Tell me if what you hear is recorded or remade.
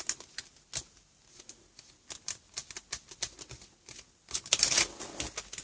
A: recorded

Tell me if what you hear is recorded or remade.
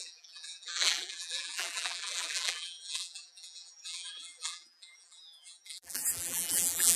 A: remade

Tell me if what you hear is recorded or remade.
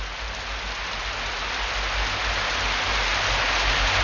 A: recorded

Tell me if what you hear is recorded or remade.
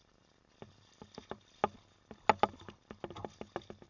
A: recorded